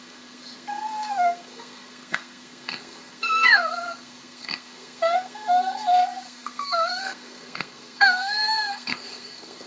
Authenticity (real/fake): fake